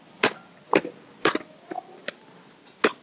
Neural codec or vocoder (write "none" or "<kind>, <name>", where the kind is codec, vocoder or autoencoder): none